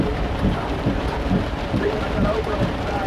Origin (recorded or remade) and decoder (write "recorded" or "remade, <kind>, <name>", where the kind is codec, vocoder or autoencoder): remade, vocoder, BigVGAN v2